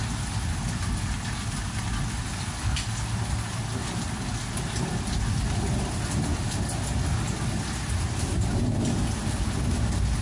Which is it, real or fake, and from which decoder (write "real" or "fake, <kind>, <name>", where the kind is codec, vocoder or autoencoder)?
real